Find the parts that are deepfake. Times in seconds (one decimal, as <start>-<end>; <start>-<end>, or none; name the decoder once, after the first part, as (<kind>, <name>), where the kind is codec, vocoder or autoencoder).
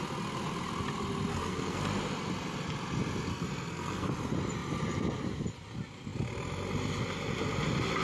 1.3-1.8 (codec, SNAC); 3.3-4.1